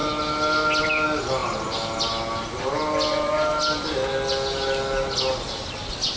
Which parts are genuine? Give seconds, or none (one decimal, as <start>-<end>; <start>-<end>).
0.0-6.2